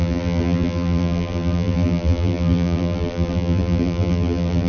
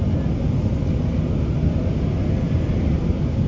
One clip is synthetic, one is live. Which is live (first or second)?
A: second